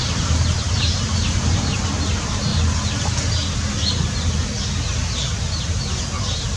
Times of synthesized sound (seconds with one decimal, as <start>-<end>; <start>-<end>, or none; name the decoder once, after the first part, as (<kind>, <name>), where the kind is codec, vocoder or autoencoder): 0.0-2.5 (vocoder, BigVGAN v2)